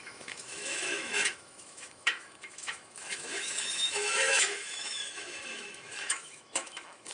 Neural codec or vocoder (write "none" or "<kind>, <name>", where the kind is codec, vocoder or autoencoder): autoencoder, DAC-VAE